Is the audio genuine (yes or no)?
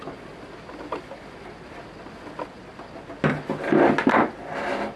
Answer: yes